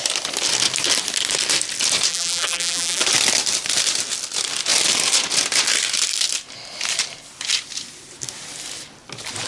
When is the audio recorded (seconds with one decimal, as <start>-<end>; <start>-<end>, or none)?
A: 0.0-2.1; 3.0-9.5